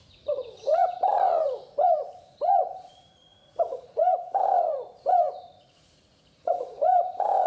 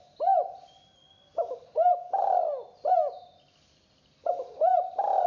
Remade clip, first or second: first